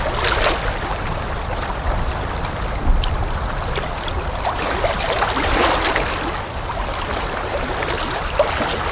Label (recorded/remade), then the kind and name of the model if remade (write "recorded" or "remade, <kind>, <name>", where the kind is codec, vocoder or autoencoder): recorded